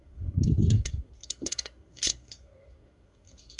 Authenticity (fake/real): fake